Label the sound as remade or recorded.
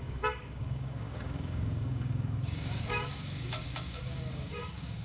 remade